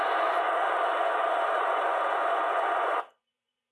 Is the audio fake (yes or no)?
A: yes